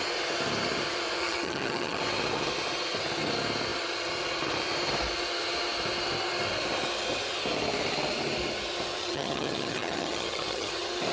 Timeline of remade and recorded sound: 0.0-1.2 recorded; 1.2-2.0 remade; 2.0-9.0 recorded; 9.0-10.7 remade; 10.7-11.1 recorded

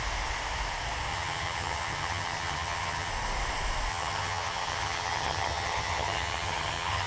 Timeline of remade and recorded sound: 0.0-1.1 recorded; 1.1-3.1 remade; 3.1-3.9 recorded; 3.9-7.1 remade

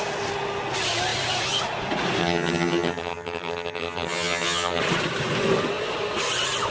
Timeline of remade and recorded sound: 0.0-2.2 recorded; 2.2-4.8 remade; 4.8-6.7 recorded

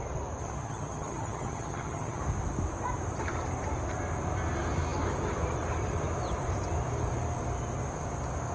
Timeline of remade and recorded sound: 0.0-0.4 recorded; 0.4-2.2 remade; 2.2-8.5 recorded

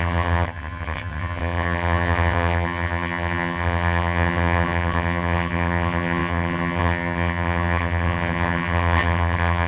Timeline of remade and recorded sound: 0.0-9.7 remade

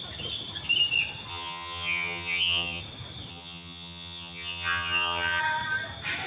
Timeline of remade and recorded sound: 0.0-1.3 recorded; 1.3-2.8 remade; 2.8-3.3 recorded; 3.3-5.4 remade; 5.4-6.3 recorded

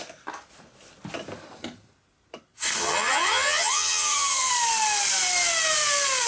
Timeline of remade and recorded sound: 0.0-2.8 recorded; 2.8-4.5 remade; 4.5-6.3 recorded

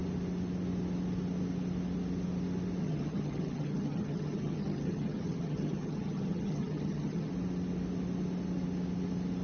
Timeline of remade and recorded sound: 0.0-2.8 recorded; 2.8-7.3 remade; 7.3-9.4 recorded